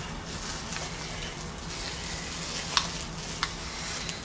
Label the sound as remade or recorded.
recorded